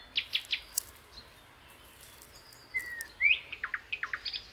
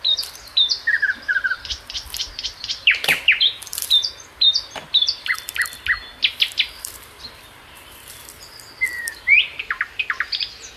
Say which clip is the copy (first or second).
second